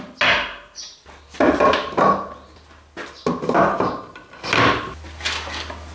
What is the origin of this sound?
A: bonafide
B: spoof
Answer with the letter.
A